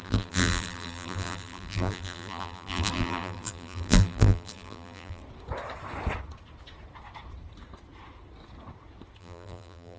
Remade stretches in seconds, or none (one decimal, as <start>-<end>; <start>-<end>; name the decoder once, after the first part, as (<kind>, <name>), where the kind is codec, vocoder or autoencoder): 0.0-5.2 (vocoder, BigVGAN v2); 9.2-10.0